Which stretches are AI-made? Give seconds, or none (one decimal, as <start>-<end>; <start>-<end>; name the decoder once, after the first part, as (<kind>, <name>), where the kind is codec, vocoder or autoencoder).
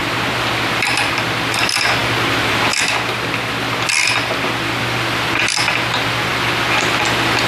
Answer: none